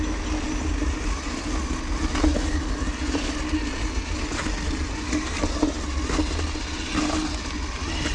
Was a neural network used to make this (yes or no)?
no